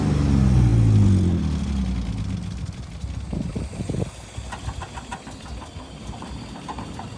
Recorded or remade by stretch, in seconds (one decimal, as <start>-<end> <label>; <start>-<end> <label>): 0.0-7.2 recorded